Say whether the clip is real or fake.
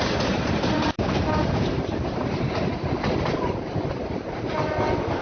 fake